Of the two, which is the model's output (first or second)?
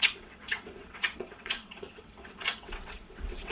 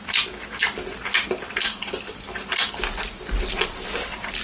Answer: first